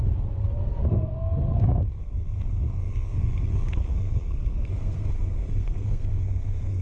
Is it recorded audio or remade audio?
remade